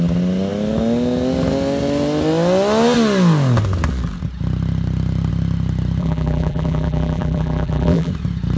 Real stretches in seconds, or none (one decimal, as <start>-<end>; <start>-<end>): 0.0-6.0; 8.1-8.6